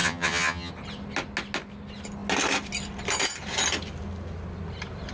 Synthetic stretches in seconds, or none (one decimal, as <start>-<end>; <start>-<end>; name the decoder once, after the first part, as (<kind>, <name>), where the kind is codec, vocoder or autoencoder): 0.0-0.7 (vocoder, HiFi-GAN)

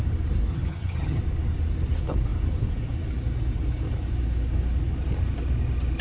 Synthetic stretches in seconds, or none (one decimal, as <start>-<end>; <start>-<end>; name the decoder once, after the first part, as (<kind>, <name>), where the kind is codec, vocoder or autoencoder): 0.5-1.2 (vocoder, HiFi-GAN)

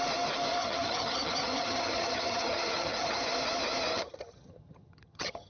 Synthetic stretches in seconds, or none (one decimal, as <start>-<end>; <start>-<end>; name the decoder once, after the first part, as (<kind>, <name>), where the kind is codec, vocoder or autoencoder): 0.6-3.2 (vocoder, HiFi-GAN); 3.9-5.5